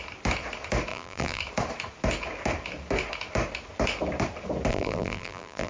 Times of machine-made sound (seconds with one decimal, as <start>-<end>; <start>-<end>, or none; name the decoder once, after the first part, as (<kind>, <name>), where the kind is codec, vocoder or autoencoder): 0.9-1.4 (vocoder, BigVGAN v2); 4.7-5.7